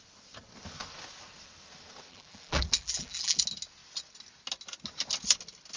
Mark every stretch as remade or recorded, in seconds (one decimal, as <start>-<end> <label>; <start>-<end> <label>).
0.0-2.1 recorded; 2.1-3.4 remade; 3.4-5.8 recorded